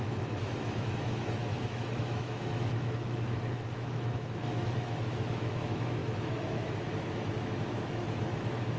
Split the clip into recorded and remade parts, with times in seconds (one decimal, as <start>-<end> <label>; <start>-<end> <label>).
0.0-8.8 remade